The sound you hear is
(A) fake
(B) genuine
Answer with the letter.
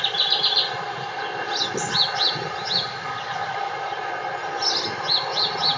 B